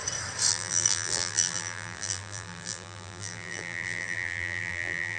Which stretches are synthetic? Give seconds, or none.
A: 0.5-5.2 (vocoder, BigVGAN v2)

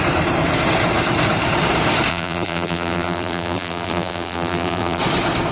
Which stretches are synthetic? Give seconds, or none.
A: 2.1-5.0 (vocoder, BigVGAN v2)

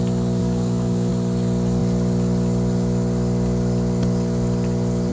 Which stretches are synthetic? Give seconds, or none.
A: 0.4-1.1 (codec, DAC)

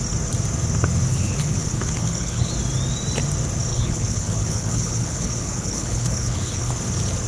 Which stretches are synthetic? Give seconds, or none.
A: 1.1-2.5 (codec, HILCodec); 3.7-6.7